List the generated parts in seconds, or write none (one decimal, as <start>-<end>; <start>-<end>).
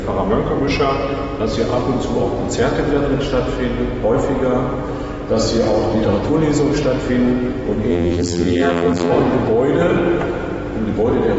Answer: 7.9-9.1